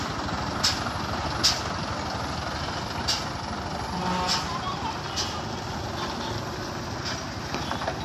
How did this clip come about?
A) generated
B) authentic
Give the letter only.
B